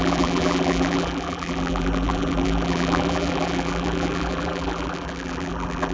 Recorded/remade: remade